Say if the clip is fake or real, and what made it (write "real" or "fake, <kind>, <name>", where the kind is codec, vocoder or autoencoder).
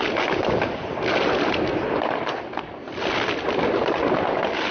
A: real